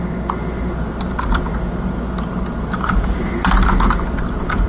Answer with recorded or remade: recorded